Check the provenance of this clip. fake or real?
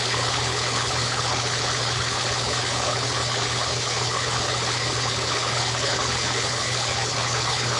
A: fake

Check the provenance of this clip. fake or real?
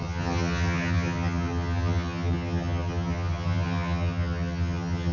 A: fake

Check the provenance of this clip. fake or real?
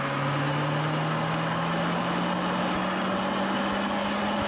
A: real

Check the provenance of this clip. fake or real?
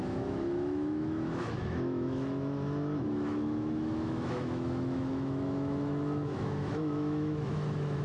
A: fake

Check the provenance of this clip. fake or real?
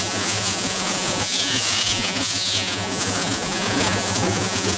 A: fake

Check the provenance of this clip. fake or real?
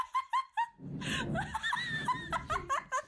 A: real